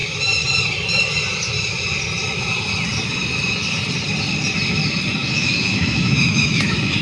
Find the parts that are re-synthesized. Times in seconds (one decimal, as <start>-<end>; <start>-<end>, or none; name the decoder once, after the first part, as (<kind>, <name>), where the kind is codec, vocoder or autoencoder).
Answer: 5.2-7.0 (autoencoder, DAC-VAE)